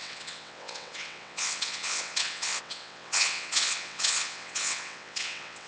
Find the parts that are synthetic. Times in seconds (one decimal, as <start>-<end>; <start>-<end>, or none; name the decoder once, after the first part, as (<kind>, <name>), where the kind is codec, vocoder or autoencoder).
0.0-5.7 (vocoder, WaveNeXt)